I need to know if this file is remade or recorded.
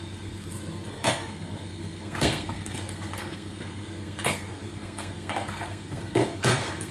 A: remade